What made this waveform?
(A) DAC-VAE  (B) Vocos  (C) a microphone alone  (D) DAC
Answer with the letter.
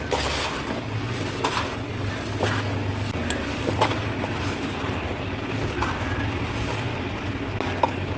C